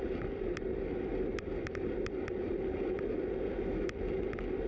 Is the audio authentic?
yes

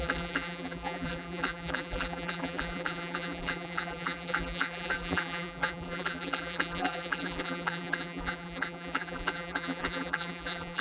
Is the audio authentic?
no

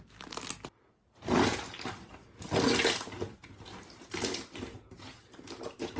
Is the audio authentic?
yes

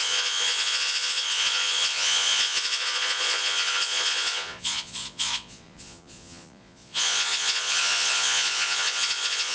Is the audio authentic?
no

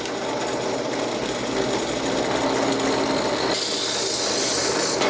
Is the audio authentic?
yes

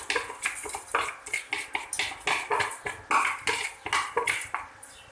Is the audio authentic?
yes